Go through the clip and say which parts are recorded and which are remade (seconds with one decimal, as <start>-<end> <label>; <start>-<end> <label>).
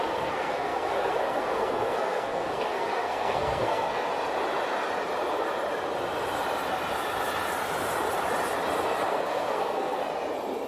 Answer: 0.0-4.1 remade; 4.1-9.1 recorded; 9.1-10.0 remade; 10.0-10.7 recorded